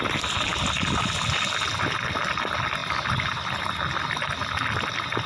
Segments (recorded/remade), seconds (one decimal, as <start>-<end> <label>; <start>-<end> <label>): 0.0-5.3 recorded